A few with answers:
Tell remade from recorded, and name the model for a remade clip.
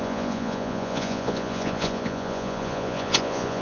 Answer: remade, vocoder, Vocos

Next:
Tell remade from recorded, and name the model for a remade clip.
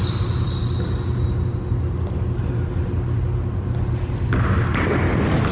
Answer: recorded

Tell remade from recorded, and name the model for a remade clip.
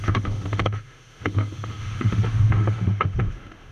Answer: remade, autoencoder, DAC-VAE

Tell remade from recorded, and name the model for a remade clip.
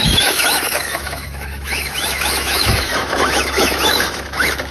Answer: remade, autoencoder, DAC-VAE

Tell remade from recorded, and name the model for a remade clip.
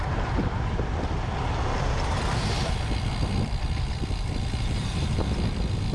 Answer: remade, vocoder, BigVGAN v2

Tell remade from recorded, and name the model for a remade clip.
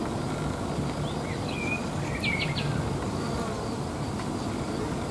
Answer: recorded